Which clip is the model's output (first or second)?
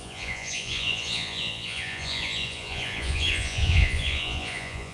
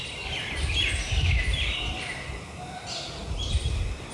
first